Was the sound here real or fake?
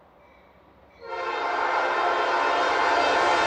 real